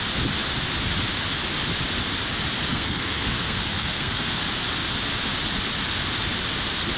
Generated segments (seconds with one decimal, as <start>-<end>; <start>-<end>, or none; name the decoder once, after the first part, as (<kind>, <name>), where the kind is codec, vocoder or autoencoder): 2.7-4.4 (codec, SNAC)